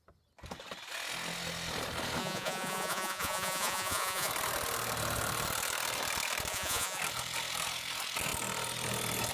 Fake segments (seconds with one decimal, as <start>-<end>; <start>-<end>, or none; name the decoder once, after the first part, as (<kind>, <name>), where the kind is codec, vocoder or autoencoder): 2.2-4.3 (vocoder, Vocos); 6.5-7.0